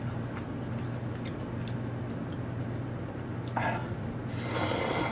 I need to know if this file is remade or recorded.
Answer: recorded